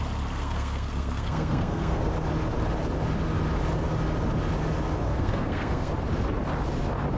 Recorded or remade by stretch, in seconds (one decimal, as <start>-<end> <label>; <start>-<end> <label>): 0.0-0.4 recorded; 0.4-2.1 remade; 2.1-5.1 recorded; 5.1-5.9 remade; 5.9-7.2 recorded